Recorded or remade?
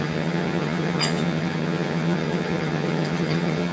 remade